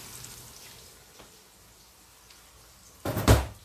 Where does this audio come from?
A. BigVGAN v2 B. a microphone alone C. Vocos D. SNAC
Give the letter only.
B